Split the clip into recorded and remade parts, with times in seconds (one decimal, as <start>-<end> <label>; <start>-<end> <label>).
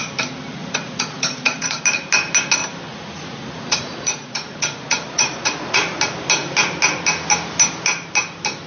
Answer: 0.0-0.6 recorded; 0.6-1.8 remade; 1.8-2.9 recorded; 2.9-6.0 remade; 6.0-8.7 recorded